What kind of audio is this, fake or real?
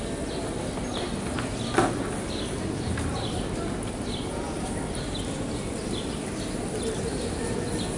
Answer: real